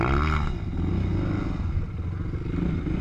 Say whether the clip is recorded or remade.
recorded